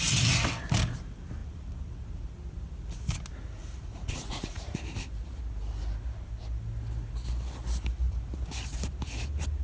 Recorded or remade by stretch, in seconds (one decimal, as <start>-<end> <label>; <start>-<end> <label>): 0.0-3.6 recorded; 3.6-4.8 remade; 4.8-9.6 recorded